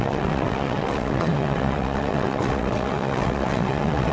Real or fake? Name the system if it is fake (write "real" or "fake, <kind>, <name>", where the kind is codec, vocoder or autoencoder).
fake, vocoder, WaveNeXt